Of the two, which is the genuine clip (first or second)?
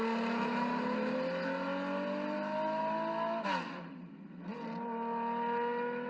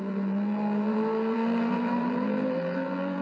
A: first